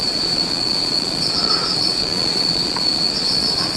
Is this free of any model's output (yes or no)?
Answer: no